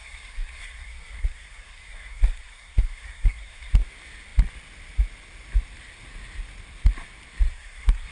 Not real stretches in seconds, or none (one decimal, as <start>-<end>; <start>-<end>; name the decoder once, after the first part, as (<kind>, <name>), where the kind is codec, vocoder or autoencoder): 0.0-3.7 (codec, SNAC); 7.5-8.1